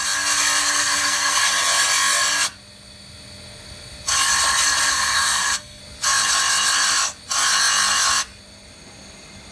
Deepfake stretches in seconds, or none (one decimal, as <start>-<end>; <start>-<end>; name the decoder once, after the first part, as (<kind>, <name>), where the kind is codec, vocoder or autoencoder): 0.6-1.5 (codec, SNAC); 4.9-5.8